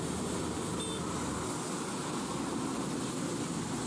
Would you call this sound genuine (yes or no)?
yes